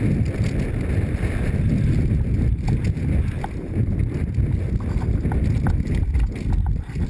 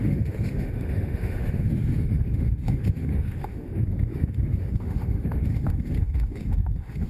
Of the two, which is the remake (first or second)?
second